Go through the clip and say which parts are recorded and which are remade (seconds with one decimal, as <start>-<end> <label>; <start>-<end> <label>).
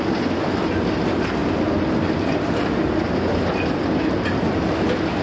0.0-5.2 recorded